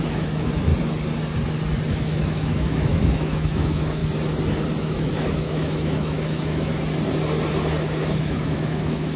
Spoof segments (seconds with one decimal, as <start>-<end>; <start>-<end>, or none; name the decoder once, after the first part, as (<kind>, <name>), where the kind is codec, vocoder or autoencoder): 0.0-0.7 (autoencoder, DAC-VAE); 1.9-4.0; 4.8-6.7; 8.2-9.2